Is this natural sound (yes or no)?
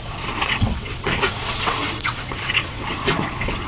no